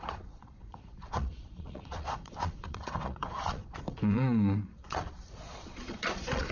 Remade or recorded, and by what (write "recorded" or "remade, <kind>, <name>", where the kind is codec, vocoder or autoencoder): remade, vocoder, Vocos